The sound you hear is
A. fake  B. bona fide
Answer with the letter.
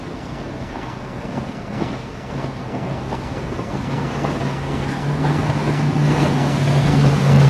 A